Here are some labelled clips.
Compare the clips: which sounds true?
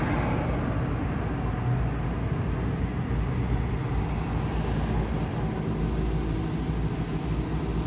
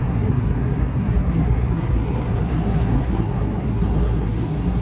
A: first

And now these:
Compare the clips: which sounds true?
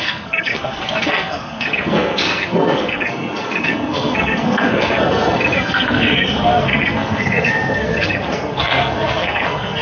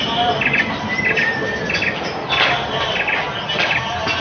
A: second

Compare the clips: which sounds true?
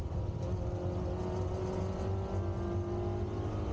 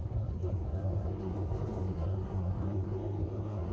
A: first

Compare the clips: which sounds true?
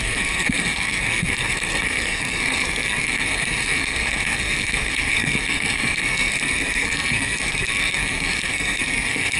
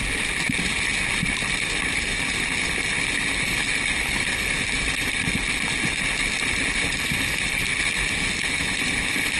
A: second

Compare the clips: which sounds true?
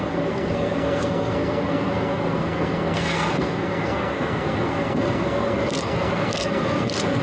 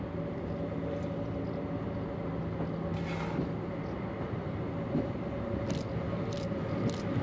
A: second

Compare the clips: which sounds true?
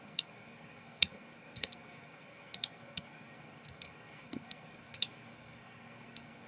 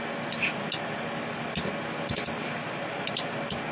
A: second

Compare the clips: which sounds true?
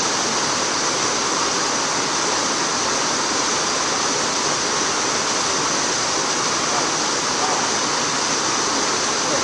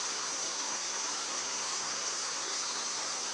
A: first